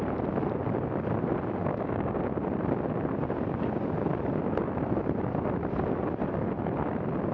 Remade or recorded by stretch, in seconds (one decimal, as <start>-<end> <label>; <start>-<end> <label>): 0.0-1.6 recorded; 1.6-2.2 remade; 2.2-7.3 recorded